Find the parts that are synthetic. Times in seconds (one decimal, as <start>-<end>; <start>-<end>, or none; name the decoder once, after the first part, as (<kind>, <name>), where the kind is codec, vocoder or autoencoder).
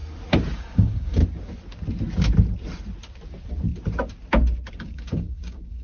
0.6-1.2 (codec, DAC); 4.7-5.8